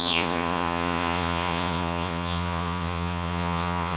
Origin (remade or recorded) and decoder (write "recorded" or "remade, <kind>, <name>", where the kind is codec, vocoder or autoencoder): remade, vocoder, Vocos